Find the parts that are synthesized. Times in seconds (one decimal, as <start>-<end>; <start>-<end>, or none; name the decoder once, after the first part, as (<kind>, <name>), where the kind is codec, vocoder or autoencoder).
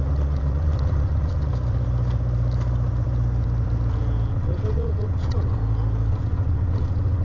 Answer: 0.0-1.5 (vocoder, WaveNeXt); 4.3-5.6; 6.1-7.2